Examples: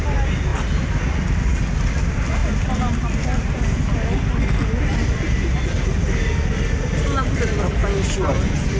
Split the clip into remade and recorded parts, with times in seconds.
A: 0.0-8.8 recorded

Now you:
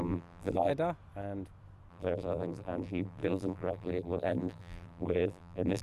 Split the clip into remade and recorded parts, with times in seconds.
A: 0.0-0.7 remade; 0.7-1.9 recorded; 1.9-5.8 remade